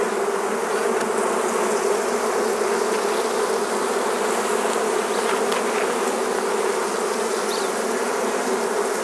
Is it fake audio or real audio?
real